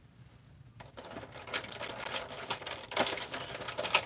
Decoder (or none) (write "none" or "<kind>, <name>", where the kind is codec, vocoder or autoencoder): none